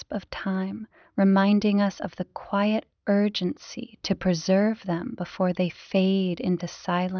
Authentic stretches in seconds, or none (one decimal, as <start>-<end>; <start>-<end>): 0.0-7.2